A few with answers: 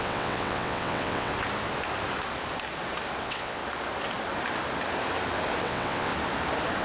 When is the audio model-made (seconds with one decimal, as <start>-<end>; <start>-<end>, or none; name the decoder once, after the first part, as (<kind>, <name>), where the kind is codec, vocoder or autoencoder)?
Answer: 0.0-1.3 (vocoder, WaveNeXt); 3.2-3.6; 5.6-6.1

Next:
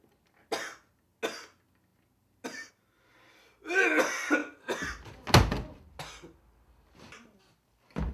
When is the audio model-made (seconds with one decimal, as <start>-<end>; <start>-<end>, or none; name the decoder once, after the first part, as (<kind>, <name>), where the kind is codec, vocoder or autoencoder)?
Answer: none

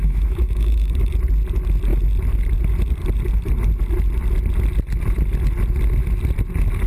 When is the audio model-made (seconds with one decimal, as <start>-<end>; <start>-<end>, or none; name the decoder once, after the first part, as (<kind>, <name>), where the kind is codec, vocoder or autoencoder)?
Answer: 0.0-1.1 (autoencoder, DAC-VAE)

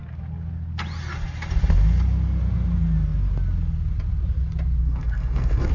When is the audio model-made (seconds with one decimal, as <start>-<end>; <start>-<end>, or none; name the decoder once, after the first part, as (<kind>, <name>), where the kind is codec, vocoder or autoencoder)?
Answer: 4.8-5.7 (codec, SNAC)

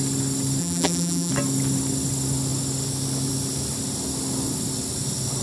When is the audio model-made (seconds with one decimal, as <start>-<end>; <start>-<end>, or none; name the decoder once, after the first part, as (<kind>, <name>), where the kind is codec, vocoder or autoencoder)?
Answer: 0.6-1.3 (vocoder, BigVGAN v2)

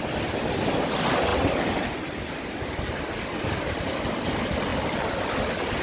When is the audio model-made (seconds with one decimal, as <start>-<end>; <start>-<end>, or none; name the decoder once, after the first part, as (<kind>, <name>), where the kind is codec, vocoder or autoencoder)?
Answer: none

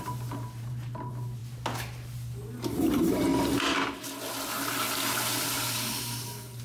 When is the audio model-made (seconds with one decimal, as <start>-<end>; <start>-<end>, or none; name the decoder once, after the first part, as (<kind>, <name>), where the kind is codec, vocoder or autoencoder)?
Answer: 0.0-1.4 (vocoder, BigVGAN v2); 2.7-3.3

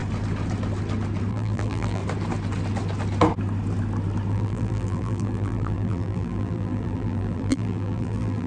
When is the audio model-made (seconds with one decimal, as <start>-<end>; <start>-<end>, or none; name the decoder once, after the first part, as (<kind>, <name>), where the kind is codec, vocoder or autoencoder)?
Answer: 1.3-2.0 (vocoder, BigVGAN v2); 4.3-8.5